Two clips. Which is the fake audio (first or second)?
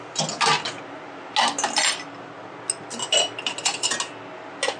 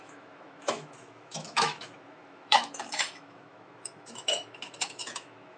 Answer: second